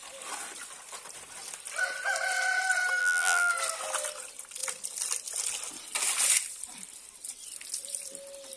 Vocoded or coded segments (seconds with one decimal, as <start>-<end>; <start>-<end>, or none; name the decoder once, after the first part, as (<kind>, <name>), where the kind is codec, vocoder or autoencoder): 3.0-3.5 (vocoder, BigVGAN v2)